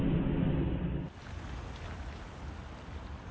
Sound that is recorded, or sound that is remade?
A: recorded